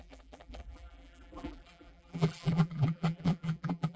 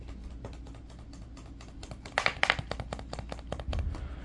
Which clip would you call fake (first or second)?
first